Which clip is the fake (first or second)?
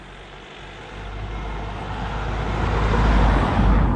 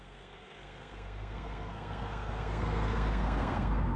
second